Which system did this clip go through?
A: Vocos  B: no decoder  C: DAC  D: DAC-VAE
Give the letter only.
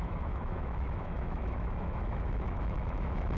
D